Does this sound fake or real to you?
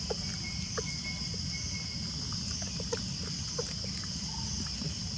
real